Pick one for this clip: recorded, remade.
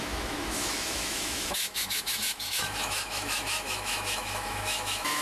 remade